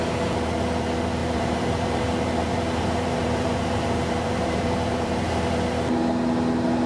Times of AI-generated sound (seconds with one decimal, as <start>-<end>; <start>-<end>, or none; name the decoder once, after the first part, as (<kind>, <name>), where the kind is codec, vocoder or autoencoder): 1.2-5.3 (vocoder, BigVGAN v2)